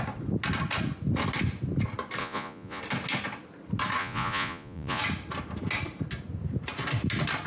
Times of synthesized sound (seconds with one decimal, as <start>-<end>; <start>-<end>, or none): 2.2-2.8; 4.0-5.0

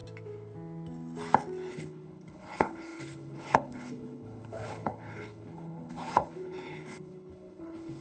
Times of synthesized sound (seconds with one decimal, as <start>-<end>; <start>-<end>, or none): 1.7-8.0

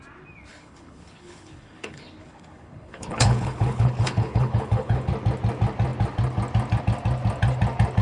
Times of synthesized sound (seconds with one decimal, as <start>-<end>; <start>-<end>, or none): 0.5-5.1